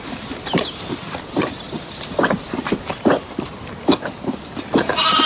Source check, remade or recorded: remade